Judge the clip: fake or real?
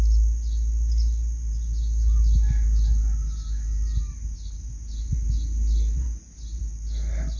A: real